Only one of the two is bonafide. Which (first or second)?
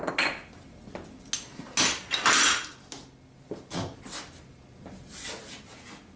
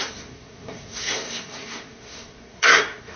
first